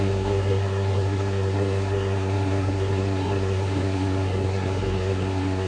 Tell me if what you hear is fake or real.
fake